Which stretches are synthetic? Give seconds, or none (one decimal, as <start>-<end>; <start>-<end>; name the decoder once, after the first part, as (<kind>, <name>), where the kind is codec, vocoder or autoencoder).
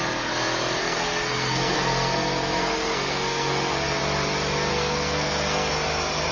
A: 0.8-4.0 (codec, SNAC); 4.7-5.7